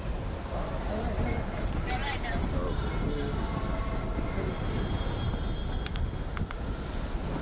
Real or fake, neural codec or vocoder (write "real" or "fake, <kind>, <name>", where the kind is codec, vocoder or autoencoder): real